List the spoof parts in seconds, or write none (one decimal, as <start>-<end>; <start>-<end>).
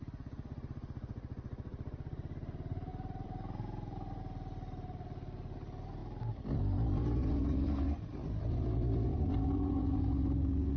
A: 2.9-4.2; 6.0-9.4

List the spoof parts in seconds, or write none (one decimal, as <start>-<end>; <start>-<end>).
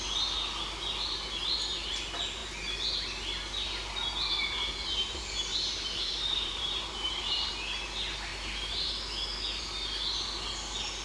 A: 5.5-7.5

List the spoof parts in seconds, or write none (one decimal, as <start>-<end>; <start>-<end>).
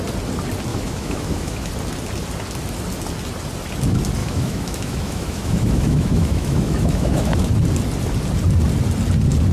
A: 0.7-1.7; 4.2-7.5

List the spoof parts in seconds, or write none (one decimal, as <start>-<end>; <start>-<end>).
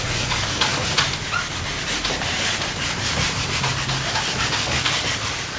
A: 0.0-0.7; 4.1-5.6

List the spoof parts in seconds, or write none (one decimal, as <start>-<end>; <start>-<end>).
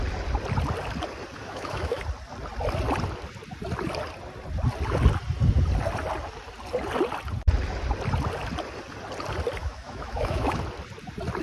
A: 1.4-2.0; 9.6-10.6